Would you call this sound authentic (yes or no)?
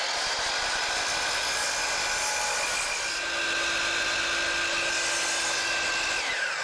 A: yes